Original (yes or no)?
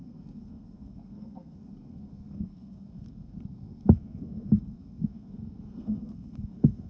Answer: no